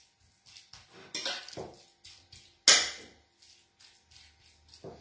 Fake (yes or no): no